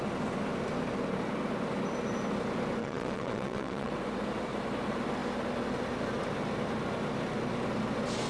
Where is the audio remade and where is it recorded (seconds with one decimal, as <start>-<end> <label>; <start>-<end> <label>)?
0.0-2.8 recorded; 2.8-3.9 remade; 3.9-8.3 recorded